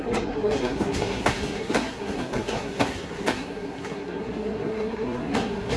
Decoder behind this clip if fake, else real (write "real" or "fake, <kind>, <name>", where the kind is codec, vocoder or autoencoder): fake, codec, SNAC